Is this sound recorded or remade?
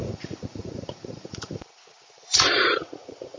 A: remade